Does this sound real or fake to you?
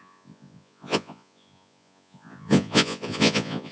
fake